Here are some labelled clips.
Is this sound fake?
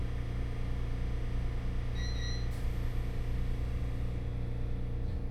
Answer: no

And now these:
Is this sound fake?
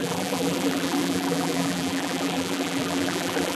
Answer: yes